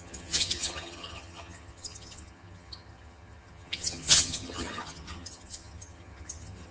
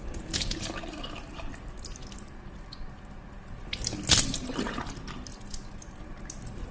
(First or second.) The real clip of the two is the second